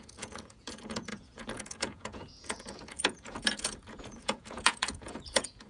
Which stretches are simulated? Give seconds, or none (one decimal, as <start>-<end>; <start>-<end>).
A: 0.0-5.7